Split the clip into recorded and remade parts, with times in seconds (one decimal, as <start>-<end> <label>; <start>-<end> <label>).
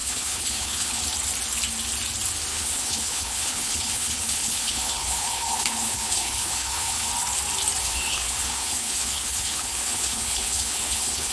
0.0-1.0 remade; 1.0-2.5 recorded; 2.5-7.1 remade; 7.1-7.8 recorded; 7.8-11.3 remade